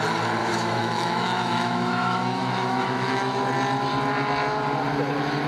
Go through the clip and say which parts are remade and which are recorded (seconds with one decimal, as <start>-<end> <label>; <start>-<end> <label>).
0.0-0.4 recorded; 0.4-3.4 remade; 3.4-5.5 recorded